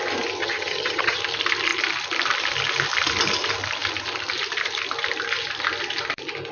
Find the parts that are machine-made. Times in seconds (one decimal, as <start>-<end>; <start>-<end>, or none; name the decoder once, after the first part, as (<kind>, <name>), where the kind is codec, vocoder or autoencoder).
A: 0.4-1.2 (vocoder, HiFi-GAN)